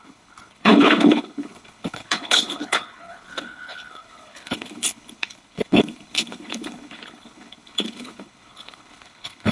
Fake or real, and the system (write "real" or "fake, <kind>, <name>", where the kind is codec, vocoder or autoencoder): fake, codec, HILCodec